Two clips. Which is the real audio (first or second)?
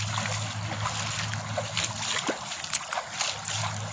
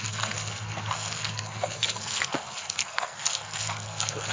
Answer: first